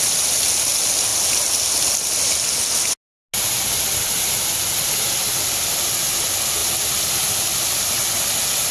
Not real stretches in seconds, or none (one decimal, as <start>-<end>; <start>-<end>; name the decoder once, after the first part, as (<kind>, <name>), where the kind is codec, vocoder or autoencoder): none